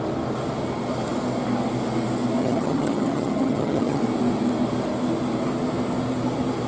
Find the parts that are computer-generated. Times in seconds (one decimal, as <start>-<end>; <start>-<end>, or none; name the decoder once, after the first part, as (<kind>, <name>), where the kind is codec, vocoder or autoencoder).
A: 2.4-4.0 (vocoder, HiFi-GAN)